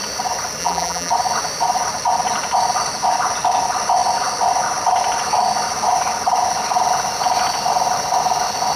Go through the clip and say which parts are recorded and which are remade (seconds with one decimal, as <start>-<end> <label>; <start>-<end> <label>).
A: 0.0-0.6 recorded; 0.6-1.1 remade; 1.1-8.8 recorded